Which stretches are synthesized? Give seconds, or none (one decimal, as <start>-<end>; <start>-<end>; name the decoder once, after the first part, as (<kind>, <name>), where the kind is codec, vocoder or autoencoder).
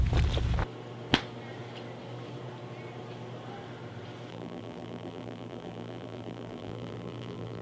4.3-7.6 (vocoder, BigVGAN v2)